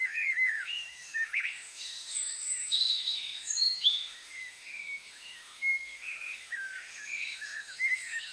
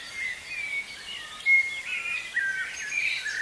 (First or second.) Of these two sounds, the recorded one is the second